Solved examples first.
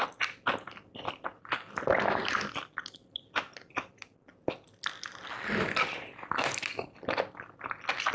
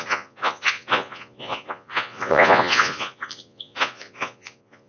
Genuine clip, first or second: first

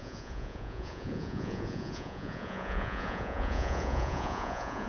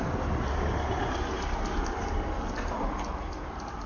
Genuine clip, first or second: second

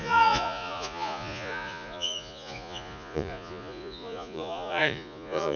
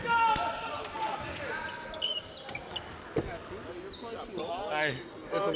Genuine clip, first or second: second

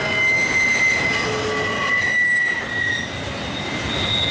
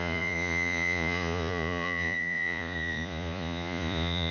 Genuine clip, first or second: first